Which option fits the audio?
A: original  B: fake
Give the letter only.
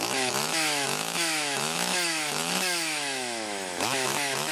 B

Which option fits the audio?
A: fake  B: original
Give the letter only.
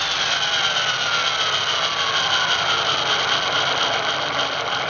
B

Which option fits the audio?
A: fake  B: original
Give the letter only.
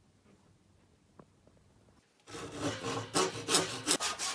B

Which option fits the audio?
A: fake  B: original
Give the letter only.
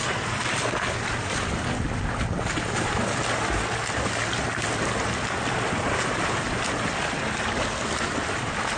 B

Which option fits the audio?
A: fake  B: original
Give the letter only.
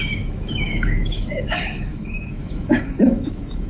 A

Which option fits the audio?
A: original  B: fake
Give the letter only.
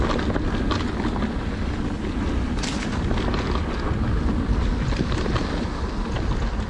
A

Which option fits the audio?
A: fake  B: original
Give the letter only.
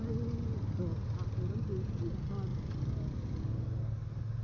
B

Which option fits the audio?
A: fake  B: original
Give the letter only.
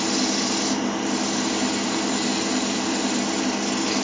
B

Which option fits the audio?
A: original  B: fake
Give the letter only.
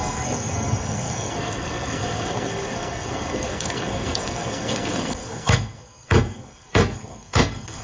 B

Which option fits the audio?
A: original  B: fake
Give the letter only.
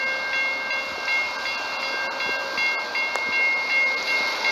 A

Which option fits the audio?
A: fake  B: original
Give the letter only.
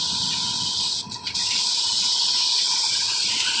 B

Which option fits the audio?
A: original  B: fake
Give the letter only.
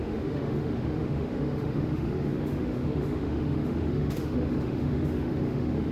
B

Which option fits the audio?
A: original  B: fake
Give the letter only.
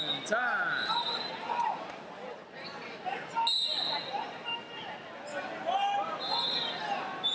A